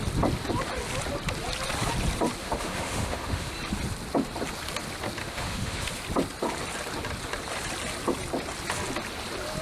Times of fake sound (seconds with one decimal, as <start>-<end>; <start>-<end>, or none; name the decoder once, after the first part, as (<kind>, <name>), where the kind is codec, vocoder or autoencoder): 2.4-3.5 (autoencoder, DAC-VAE); 5.2-5.9